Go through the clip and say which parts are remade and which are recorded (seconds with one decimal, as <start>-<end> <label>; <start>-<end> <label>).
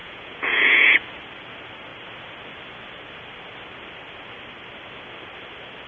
0.0-1.0 remade; 1.0-5.9 recorded